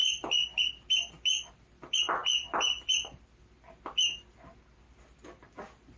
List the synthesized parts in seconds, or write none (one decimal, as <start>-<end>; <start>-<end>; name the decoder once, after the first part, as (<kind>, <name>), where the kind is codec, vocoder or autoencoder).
none